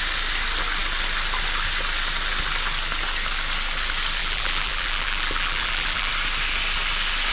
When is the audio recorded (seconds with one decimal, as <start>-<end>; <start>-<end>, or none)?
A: 0.0-4.2; 6.1-7.3